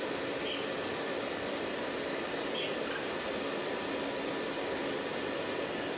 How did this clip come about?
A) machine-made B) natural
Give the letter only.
B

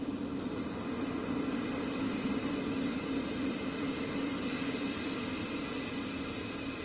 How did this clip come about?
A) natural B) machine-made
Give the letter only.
A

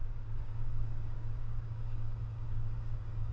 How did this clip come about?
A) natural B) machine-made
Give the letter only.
B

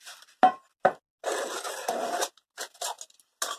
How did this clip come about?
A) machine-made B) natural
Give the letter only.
B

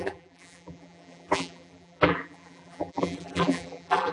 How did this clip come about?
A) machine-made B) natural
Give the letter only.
A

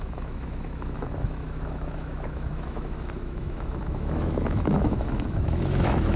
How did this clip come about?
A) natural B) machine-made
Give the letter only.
B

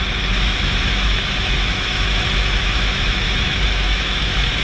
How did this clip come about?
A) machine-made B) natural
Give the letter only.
A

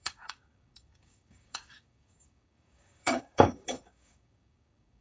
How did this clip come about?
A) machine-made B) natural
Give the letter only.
A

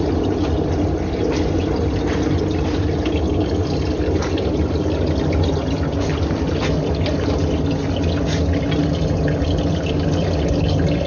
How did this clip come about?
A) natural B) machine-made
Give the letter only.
A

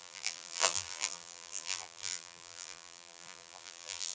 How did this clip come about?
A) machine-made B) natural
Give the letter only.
A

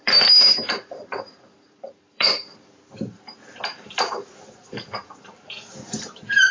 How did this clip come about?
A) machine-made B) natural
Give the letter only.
A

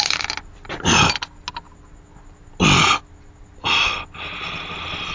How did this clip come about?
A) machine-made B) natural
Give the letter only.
B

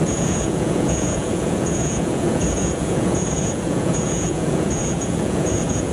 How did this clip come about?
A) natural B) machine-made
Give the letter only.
B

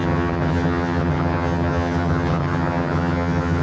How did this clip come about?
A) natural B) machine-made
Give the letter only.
B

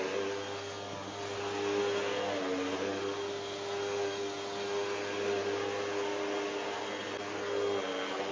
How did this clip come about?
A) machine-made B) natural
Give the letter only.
B